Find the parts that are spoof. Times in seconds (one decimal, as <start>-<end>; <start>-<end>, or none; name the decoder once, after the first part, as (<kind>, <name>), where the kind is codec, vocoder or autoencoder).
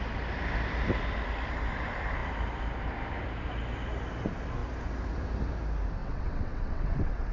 6.0-7.3 (vocoder, WaveNeXt)